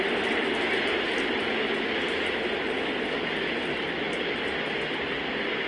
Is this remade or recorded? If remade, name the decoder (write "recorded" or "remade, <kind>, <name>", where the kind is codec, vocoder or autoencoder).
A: recorded